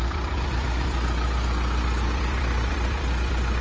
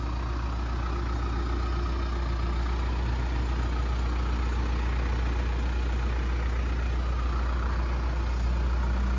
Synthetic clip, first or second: first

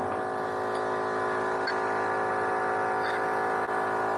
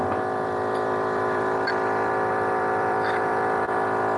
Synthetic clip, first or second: second